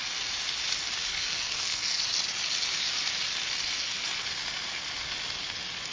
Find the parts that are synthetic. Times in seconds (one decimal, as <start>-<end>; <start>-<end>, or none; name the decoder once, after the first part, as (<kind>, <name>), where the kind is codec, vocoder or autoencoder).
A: 1.1-2.0 (codec, SNAC)